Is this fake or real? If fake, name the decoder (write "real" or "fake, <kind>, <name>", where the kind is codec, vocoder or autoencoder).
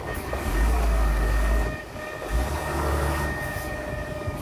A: fake, codec, DAC